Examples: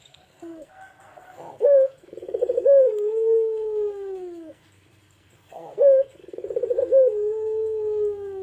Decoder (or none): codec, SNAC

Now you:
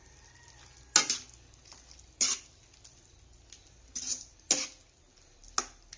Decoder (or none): none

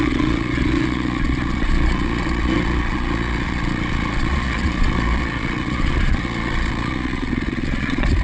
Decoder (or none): vocoder, Vocos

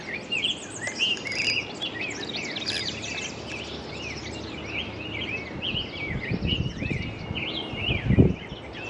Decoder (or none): none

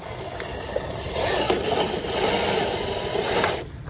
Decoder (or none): none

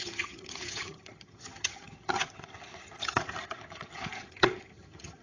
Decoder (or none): vocoder, HiFi-GAN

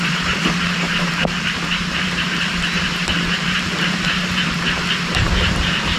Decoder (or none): vocoder, BigVGAN v2